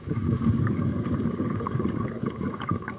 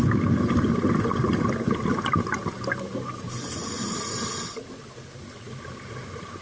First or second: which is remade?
first